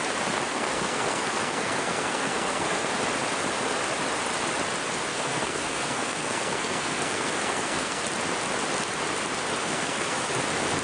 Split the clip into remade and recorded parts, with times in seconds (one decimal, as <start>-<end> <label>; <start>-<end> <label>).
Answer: 0.0-0.5 recorded; 0.5-2.9 remade; 2.9-5.1 recorded; 5.1-8.0 remade; 8.0-9.6 recorded; 9.6-10.3 remade; 10.3-10.8 recorded